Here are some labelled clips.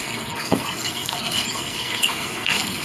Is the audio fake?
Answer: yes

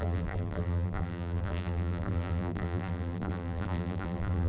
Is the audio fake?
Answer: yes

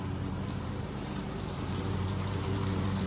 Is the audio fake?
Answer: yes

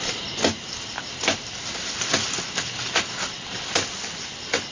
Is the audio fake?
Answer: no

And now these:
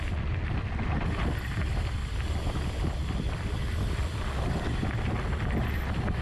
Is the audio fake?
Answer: no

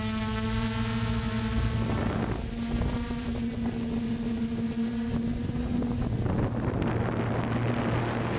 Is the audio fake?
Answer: no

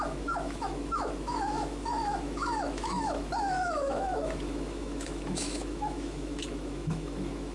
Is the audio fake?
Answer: yes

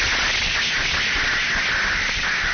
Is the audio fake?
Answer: no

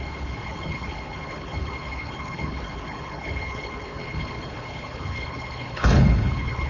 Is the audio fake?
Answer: yes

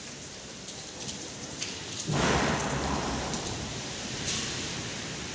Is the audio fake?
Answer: yes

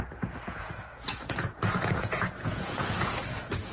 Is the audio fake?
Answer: yes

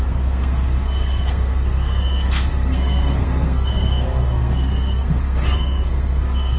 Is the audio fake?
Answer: yes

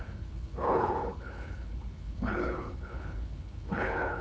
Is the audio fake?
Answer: yes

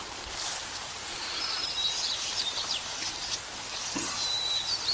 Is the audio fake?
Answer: no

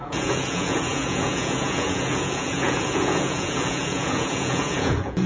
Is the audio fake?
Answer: yes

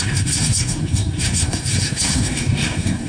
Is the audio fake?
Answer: yes